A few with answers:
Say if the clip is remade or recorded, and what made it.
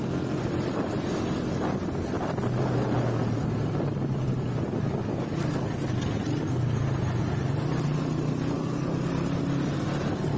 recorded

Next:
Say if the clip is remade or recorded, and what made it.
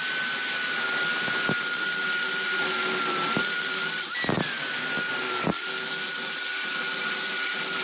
recorded